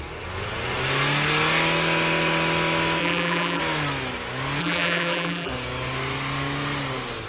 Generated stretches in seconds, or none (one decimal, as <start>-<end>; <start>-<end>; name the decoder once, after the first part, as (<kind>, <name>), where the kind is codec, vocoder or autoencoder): 3.0-3.6 (vocoder, BigVGAN v2); 4.6-5.5